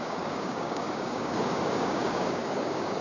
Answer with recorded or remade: remade